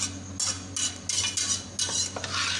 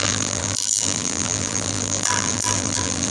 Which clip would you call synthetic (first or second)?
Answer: second